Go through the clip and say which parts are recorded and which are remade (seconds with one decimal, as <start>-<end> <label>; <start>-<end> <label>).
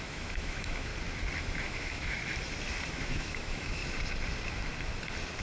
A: 0.0-0.9 remade; 0.9-1.4 recorded; 1.4-2.2 remade; 2.2-2.9 recorded; 2.9-3.8 remade; 3.8-5.4 recorded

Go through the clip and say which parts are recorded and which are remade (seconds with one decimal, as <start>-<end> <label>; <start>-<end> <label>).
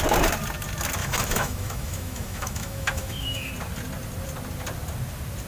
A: 0.0-1.0 recorded; 1.0-3.5 remade; 3.5-5.5 recorded